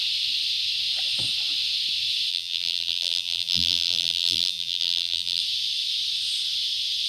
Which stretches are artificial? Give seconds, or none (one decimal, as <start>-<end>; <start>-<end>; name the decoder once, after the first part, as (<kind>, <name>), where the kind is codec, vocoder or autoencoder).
2.3-5.4 (vocoder, BigVGAN v2)